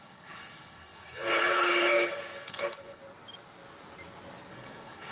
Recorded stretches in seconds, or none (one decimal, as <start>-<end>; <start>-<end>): 3.0-4.5